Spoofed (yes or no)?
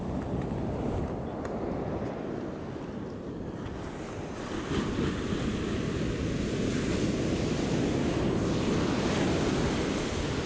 no